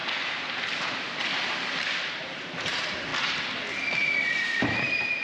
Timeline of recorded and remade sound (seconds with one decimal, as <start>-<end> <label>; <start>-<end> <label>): 0.0-0.9 recorded; 0.9-3.1 remade; 3.1-4.6 recorded; 4.6-5.2 remade